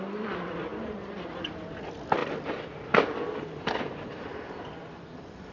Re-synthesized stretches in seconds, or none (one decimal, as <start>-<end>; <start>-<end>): 0.0-5.5